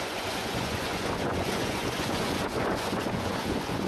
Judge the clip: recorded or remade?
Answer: remade